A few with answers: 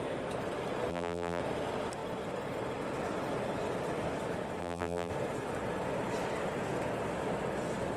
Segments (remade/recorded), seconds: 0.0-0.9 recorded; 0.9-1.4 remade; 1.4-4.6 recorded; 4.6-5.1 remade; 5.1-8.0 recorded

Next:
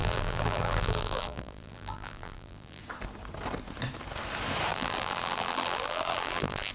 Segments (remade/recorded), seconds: 0.0-2.8 remade; 2.8-4.7 recorded; 4.7-6.7 remade

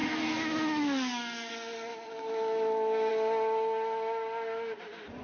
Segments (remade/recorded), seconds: 0.0-1.5 remade; 1.5-1.9 recorded; 1.9-3.1 remade; 3.1-5.2 recorded